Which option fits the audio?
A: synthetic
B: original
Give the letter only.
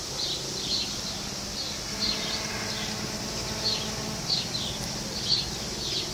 B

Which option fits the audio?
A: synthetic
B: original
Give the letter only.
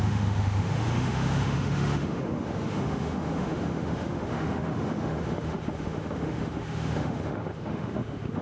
A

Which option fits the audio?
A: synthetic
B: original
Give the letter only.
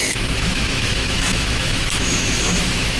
A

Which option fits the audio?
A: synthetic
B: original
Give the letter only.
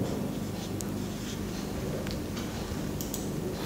B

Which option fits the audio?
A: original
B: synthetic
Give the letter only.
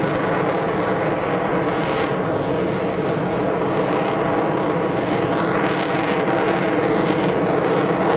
A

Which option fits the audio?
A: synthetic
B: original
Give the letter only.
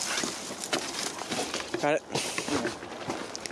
B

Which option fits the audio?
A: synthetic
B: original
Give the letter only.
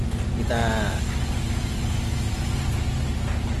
B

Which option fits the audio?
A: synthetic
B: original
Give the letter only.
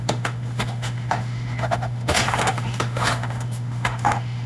A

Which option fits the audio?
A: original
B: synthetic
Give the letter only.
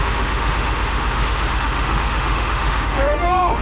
B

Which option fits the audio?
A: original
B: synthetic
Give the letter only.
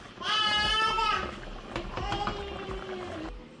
A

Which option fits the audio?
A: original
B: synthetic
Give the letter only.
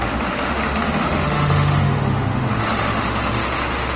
B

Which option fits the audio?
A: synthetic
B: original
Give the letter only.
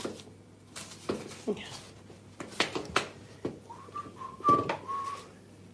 B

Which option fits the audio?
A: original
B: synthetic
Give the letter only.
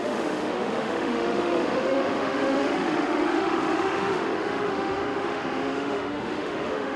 B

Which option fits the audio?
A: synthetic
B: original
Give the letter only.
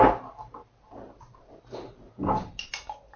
B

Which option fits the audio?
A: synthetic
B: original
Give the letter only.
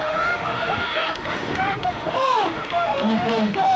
A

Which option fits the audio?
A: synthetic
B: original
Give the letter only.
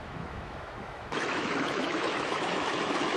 A